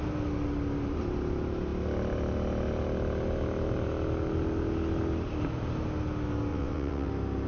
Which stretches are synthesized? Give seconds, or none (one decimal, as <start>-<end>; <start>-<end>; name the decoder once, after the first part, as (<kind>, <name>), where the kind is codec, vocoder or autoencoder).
6.5-7.1 (vocoder, WaveNeXt)